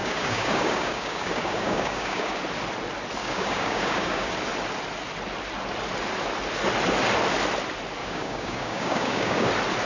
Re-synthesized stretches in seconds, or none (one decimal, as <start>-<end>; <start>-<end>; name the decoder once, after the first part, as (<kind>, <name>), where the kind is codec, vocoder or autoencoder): 0.0-2.4 (codec, DAC); 3.2-4.3; 8.0-9.5